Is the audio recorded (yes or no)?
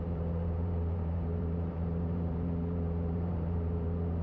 no